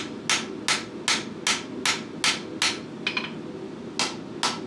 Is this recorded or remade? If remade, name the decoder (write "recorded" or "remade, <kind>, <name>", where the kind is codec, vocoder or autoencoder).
recorded